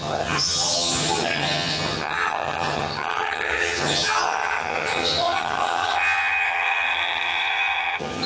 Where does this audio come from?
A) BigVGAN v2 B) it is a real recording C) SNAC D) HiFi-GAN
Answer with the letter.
D